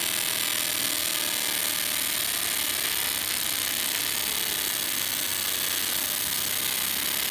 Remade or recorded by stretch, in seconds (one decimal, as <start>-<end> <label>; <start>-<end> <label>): 0.0-7.3 recorded